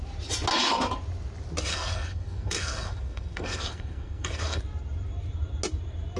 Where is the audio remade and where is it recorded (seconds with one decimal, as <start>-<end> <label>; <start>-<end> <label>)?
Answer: 0.0-1.7 recorded; 1.7-4.6 remade; 4.6-6.2 recorded